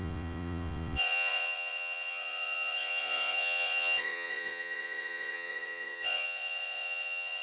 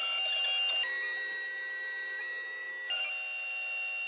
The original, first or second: second